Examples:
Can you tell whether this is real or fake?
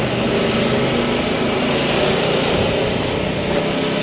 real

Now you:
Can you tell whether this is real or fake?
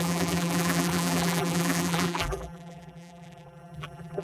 fake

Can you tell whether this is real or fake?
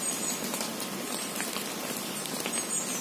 real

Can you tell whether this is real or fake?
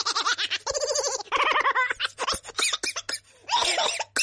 real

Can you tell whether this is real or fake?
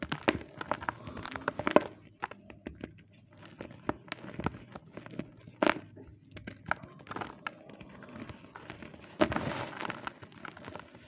real